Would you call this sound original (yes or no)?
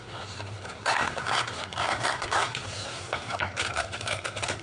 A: no